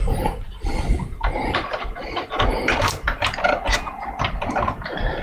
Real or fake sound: real